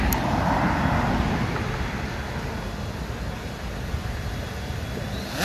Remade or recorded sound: recorded